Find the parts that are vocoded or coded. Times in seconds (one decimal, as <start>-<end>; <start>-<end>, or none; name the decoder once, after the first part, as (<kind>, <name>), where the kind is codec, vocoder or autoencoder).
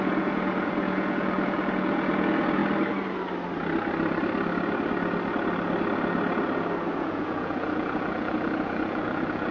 0.0-2.6 (vocoder, Vocos); 6.9-9.5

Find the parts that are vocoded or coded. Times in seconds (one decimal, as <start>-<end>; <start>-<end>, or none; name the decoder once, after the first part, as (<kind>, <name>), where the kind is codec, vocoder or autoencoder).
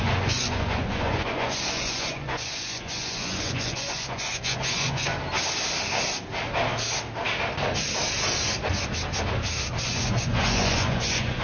0.0-5.1 (vocoder, Vocos); 9.8-11.4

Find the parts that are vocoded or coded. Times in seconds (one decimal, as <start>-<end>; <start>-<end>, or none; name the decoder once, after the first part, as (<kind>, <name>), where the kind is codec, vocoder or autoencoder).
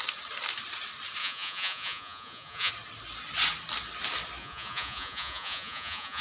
1.2-2.7 (vocoder, Vocos); 4.4-6.2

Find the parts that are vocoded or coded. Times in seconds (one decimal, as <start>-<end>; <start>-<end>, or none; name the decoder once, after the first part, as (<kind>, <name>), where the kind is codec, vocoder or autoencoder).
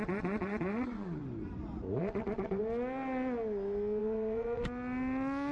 0.0-1.2 (vocoder, Vocos); 2.0-2.6; 4.0-4.6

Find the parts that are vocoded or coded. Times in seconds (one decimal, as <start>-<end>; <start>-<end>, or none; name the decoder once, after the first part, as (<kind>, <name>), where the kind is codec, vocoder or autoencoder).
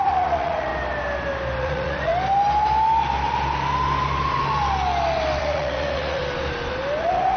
0.0-0.7 (vocoder, Vocos); 1.6-2.1; 5.4-6.2; 7.0-7.4